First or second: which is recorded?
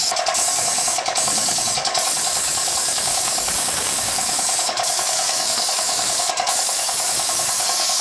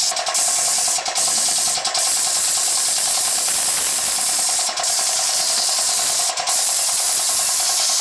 second